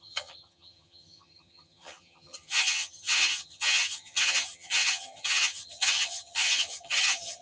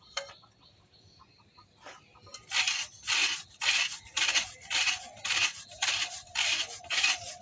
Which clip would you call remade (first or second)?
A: first